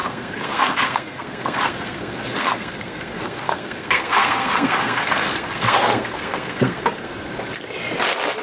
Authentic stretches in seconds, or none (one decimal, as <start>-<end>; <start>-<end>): 7.1-8.4